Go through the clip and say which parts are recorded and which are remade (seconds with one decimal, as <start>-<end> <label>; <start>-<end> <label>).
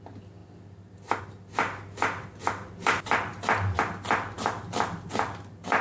0.0-5.8 recorded